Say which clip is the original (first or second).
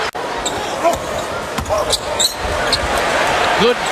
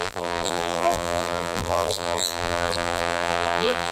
first